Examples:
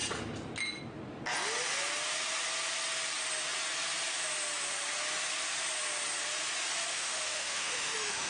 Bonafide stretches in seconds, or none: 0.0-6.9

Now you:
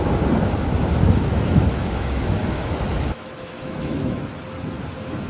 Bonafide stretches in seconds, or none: 0.0-1.0; 4.2-5.3